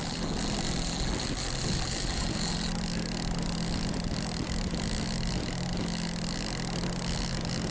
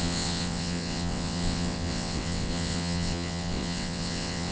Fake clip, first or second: second